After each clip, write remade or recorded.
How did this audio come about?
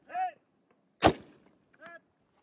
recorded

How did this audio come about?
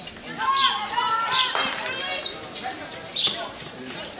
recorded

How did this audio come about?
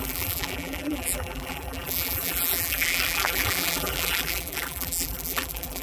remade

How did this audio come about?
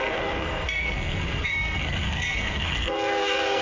remade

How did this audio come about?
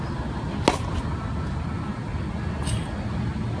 recorded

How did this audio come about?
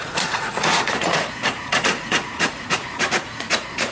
remade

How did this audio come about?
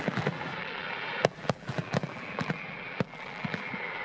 remade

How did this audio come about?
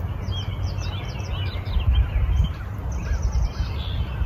recorded